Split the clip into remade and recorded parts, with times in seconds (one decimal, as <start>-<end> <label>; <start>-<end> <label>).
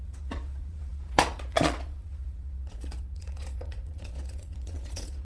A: 0.0-5.2 remade